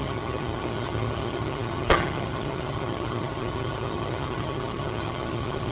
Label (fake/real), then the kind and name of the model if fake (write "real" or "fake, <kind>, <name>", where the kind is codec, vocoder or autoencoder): fake, vocoder, HiFi-GAN